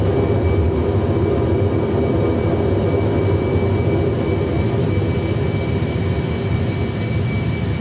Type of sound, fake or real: real